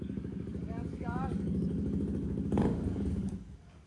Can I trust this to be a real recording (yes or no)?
no